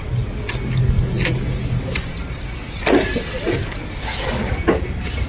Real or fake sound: real